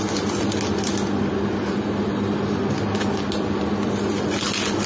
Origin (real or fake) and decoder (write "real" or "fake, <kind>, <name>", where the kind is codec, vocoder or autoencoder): real